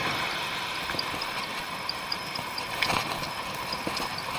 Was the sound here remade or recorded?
recorded